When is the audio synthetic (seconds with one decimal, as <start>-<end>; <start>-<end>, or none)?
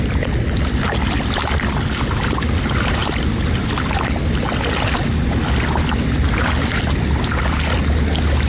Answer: none